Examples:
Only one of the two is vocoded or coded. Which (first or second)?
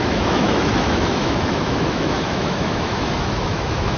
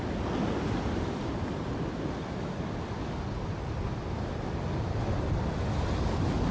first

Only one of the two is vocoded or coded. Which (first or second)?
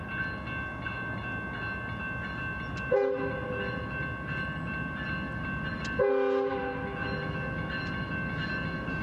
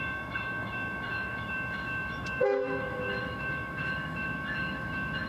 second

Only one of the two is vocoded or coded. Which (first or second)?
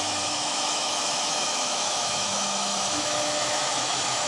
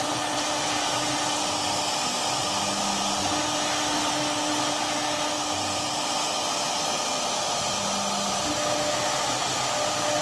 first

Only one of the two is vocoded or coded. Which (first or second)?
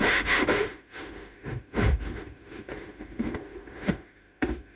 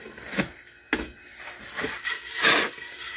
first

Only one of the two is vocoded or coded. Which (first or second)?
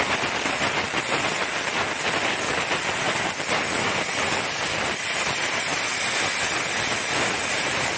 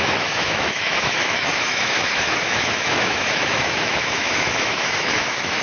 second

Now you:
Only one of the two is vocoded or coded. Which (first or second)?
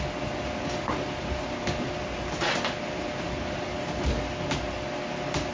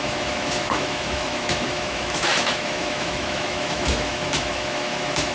second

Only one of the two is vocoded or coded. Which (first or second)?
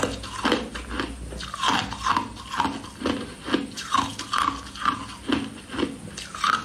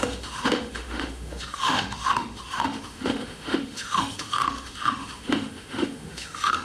second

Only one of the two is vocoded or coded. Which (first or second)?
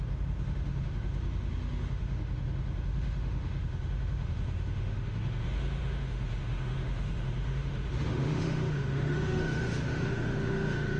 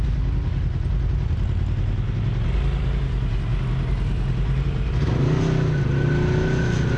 first